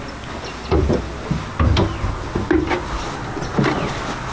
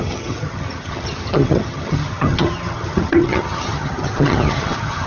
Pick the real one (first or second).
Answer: first